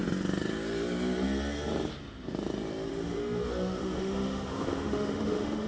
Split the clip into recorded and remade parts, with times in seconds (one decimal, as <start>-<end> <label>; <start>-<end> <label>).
0.0-2.9 recorded; 2.9-5.7 remade